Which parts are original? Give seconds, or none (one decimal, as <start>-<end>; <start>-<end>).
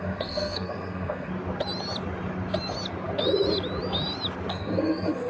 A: 1.3-4.5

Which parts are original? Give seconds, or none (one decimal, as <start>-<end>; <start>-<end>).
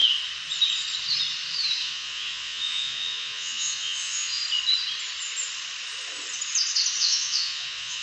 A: 0.0-1.8; 4.4-7.0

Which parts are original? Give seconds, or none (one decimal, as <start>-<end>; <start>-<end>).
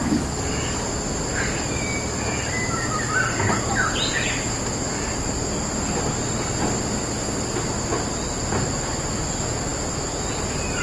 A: 0.0-10.8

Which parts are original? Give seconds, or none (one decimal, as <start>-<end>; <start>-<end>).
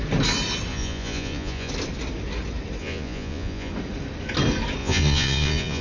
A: 0.0-0.7; 1.7-2.8; 3.7-4.8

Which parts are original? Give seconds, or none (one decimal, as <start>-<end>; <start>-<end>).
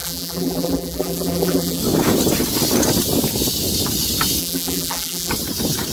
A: 1.8-4.4; 5.3-5.9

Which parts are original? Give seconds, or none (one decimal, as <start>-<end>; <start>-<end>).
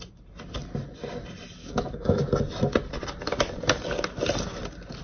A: 0.0-1.6; 2.2-5.0